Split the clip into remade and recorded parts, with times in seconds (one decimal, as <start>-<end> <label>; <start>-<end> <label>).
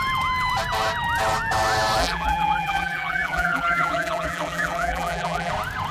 0.0-2.0 recorded; 2.0-5.5 remade; 5.5-5.9 recorded